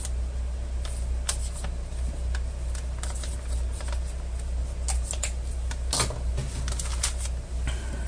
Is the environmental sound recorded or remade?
recorded